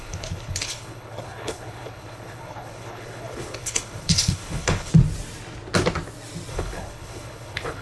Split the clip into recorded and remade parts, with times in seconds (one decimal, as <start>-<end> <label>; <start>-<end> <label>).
0.0-4.9 remade; 4.9-6.5 recorded; 6.5-7.8 remade